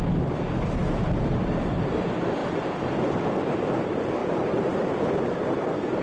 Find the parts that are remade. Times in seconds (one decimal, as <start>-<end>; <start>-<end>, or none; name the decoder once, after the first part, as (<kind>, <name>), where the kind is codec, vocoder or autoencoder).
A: 0.8-1.9 (vocoder, BigVGAN v2); 4.2-5.6